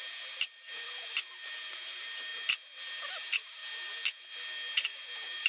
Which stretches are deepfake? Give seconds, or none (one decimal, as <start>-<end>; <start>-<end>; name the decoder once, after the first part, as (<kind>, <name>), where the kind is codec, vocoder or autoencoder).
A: 0.0-2.3 (vocoder, BigVGAN v2); 3.1-3.6; 4.7-5.5